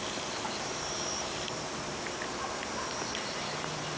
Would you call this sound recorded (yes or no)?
no